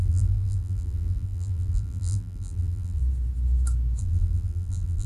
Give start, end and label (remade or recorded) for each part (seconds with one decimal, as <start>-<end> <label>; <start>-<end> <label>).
0.0-3.0 remade; 3.0-4.0 recorded; 4.0-5.1 remade